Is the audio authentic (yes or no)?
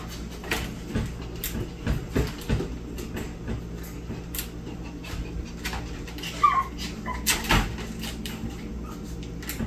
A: yes